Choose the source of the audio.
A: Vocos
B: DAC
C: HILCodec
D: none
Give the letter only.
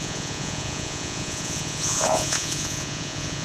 A